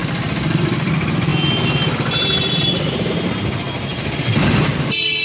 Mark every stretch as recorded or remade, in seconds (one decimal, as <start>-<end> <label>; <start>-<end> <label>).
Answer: 0.0-0.9 remade; 0.9-1.3 recorded; 1.3-3.1 remade; 3.1-3.9 recorded; 3.9-4.7 remade; 4.7-5.2 recorded